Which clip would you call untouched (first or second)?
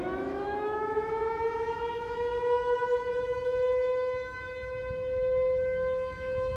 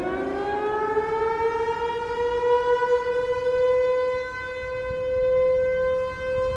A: second